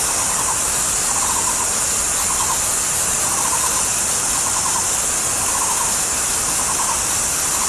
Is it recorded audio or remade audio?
recorded